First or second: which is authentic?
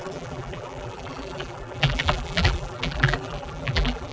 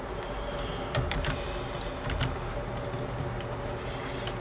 second